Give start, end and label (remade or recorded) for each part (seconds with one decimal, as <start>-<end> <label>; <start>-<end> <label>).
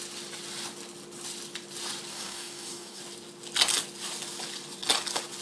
0.0-2.1 recorded; 2.1-3.0 remade; 3.0-5.4 recorded